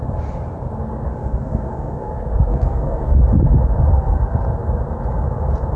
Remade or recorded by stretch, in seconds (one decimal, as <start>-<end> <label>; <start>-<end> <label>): 0.0-1.2 recorded; 1.2-2.1 remade; 2.1-2.5 recorded; 2.5-3.2 remade; 3.2-5.8 recorded